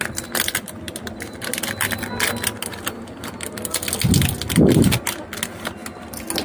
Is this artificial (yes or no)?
no